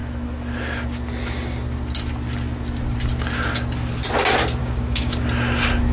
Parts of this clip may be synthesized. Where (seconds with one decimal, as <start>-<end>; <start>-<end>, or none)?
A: 4.6-5.2